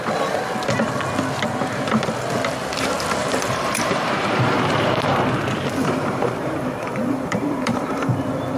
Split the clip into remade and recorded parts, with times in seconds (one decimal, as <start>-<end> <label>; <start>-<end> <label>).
0.0-3.2 recorded; 3.2-8.2 remade; 8.2-8.6 recorded